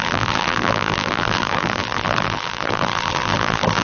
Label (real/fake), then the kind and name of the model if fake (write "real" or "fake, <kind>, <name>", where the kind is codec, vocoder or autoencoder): fake, vocoder, BigVGAN v2